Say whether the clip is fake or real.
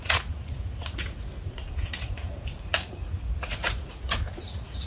fake